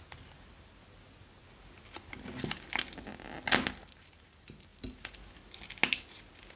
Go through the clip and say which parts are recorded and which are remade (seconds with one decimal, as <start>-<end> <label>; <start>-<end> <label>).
0.0-6.6 recorded